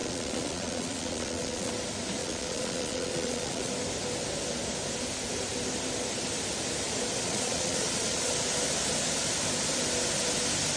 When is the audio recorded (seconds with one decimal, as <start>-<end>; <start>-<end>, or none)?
1.7-2.2; 3.7-7.2; 8.3-10.8